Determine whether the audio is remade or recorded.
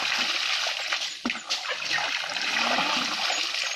remade